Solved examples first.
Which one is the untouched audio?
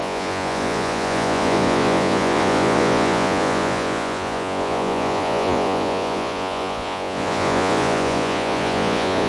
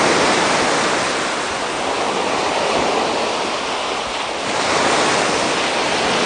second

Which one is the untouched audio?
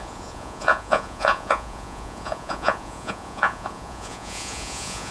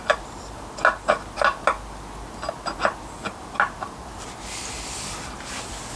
second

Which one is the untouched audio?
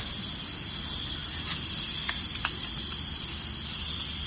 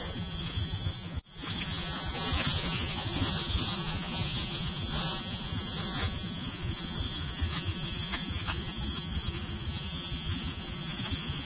first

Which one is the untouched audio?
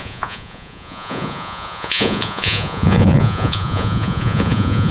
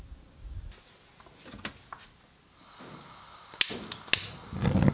second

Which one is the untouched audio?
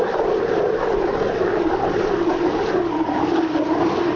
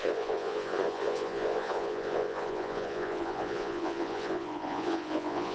first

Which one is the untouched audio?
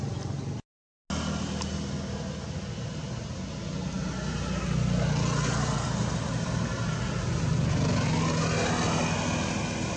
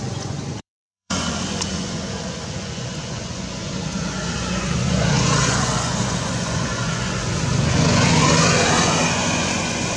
first